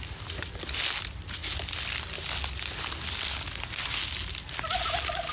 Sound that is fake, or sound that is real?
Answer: real